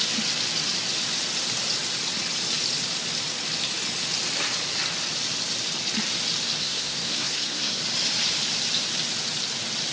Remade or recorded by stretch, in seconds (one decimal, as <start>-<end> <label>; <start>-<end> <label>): 0.0-6.6 recorded; 6.6-7.8 remade; 7.8-9.9 recorded